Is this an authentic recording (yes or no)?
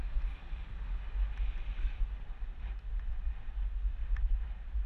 yes